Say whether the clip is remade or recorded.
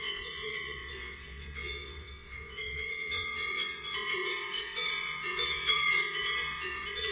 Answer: remade